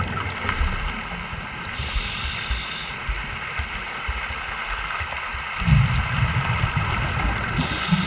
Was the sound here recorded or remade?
recorded